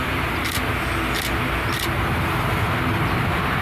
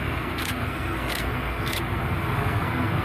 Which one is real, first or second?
first